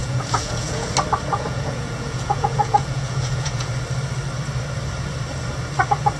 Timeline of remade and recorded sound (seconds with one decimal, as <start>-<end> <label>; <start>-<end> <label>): 0.0-0.9 remade; 0.9-1.3 recorded; 1.3-3.7 remade; 3.7-6.2 recorded